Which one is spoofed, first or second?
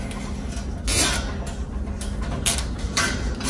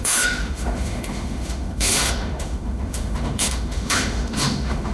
second